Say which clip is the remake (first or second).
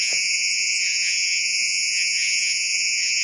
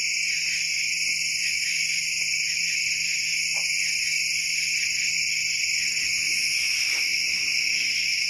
first